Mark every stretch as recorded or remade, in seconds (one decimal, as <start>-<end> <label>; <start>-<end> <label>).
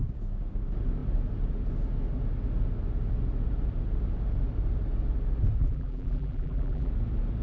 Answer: 0.0-5.6 recorded; 5.6-6.9 remade; 6.9-7.4 recorded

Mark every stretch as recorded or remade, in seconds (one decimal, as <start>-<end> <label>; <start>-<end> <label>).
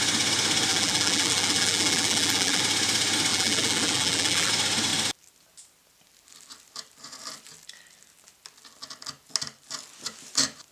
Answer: 0.0-0.7 recorded; 0.7-2.6 remade; 2.6-3.3 recorded; 3.3-4.5 remade; 4.5-10.7 recorded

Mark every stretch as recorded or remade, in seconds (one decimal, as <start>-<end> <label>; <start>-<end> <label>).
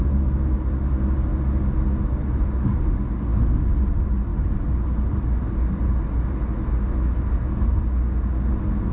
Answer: 0.0-8.9 recorded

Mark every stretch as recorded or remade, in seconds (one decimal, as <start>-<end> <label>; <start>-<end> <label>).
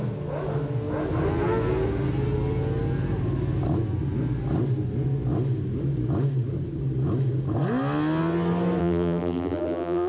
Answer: 0.0-8.8 recorded; 8.8-10.1 remade